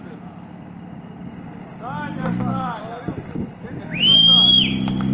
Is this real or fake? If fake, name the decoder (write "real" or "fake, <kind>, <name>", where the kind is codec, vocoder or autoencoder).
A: real